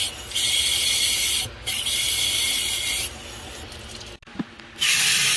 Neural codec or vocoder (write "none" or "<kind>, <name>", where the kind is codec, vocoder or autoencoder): none